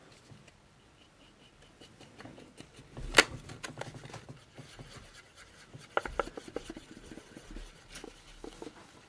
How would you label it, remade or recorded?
recorded